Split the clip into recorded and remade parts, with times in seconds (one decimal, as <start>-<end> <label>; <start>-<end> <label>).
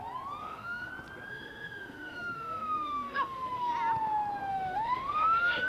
0.0-0.4 recorded; 0.4-0.9 remade; 0.9-1.3 recorded; 1.3-3.7 remade; 3.7-4.5 recorded; 4.5-5.7 remade